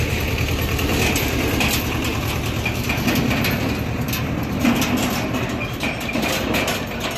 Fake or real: real